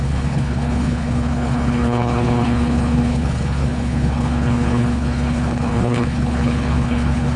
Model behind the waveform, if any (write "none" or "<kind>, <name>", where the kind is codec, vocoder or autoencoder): codec, HILCodec